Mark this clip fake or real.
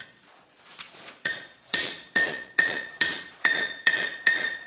fake